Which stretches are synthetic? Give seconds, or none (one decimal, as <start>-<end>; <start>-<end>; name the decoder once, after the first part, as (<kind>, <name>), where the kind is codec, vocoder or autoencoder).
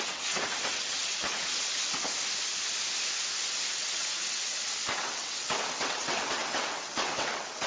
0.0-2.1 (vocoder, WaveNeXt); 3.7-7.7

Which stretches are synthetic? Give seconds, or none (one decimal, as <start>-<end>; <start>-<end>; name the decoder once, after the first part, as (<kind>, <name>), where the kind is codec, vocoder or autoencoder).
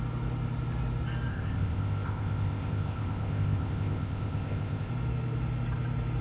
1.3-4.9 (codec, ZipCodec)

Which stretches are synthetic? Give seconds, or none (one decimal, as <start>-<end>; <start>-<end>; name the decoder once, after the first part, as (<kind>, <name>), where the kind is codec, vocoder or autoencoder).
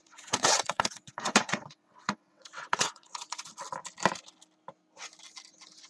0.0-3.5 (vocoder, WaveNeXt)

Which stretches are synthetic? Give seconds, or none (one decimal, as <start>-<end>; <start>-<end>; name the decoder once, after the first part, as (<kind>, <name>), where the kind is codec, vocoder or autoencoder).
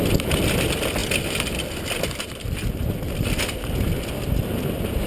none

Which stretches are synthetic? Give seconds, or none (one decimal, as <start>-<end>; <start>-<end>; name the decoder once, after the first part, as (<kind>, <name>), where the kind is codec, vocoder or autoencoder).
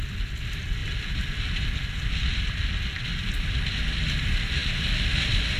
none